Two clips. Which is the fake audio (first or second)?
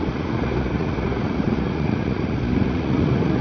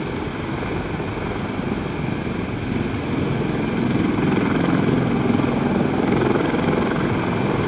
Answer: first